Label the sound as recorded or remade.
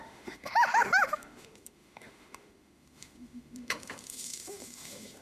remade